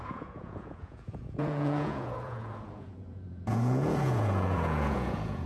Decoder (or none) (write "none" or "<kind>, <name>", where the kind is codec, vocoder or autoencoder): vocoder, Vocos